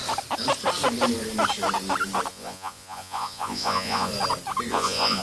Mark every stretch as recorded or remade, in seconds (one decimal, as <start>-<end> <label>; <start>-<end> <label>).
0.0-2.3 recorded; 2.3-4.1 remade; 4.1-4.7 recorded; 4.7-5.2 remade

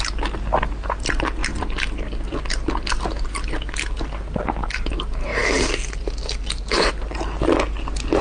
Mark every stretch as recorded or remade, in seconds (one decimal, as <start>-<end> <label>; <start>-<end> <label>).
0.0-8.2 recorded

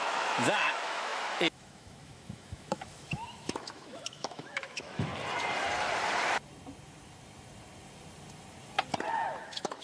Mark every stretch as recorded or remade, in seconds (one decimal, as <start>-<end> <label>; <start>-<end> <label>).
0.0-5.1 remade; 5.1-9.4 recorded; 9.4-9.8 remade

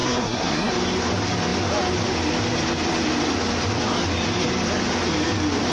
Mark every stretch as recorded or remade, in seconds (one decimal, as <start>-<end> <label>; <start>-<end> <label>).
0.0-0.7 remade; 0.7-5.7 recorded

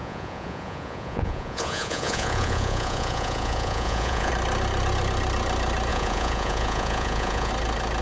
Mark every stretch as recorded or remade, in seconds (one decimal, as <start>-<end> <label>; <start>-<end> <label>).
0.0-4.3 remade; 4.3-5.9 recorded; 5.9-7.5 remade; 7.5-8.0 recorded